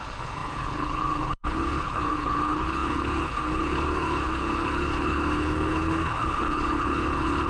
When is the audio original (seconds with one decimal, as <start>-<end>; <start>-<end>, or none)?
none

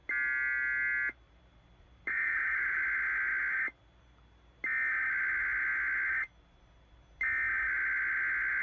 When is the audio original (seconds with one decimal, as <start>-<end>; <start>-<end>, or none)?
0.0-2.1; 2.8-8.6

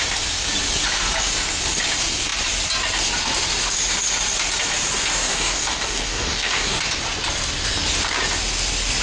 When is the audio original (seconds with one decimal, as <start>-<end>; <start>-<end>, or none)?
0.0-5.1; 6.8-9.0